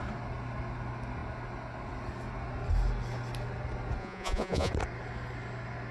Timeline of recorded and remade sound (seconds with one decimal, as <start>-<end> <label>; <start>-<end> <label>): 0.0-4.0 recorded; 4.0-4.7 remade; 4.7-5.9 recorded